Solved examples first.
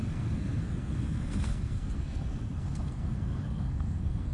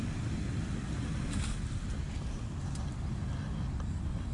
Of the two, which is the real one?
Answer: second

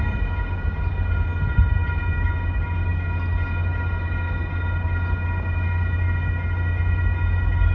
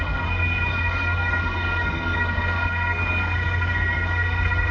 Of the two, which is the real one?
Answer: first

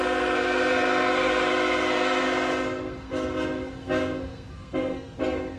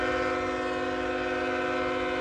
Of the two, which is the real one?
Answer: second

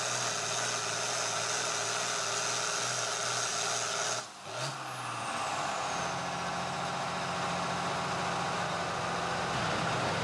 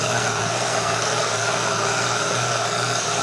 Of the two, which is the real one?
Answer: first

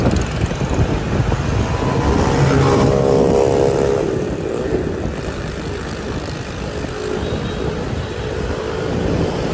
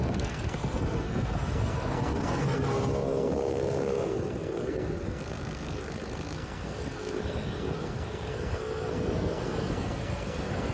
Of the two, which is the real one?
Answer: first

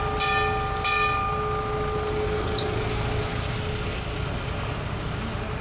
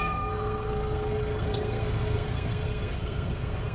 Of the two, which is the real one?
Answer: first